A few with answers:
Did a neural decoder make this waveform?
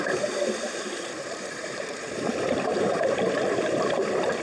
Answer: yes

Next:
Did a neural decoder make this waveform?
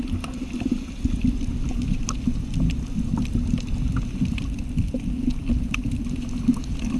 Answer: no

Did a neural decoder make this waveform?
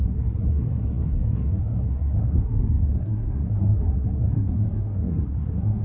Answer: yes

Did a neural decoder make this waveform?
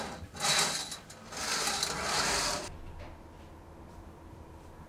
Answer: no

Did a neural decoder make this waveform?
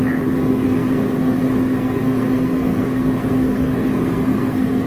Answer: yes